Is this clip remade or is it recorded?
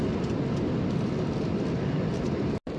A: recorded